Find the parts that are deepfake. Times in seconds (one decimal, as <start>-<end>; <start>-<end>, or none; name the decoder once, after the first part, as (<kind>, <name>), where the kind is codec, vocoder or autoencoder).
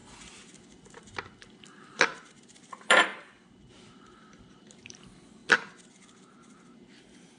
1.9-5.4 (vocoder, BigVGAN v2); 5.9-7.4